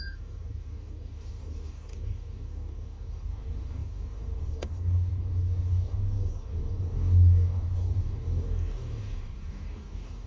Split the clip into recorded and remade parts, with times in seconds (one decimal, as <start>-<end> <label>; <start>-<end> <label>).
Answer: 0.0-10.3 remade